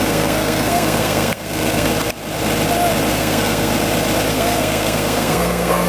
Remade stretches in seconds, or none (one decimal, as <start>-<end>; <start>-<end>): 0.0-1.9; 3.1-3.7; 4.3-5.9